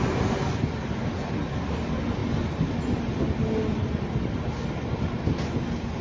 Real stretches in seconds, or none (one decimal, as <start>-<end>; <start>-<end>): 0.0-6.0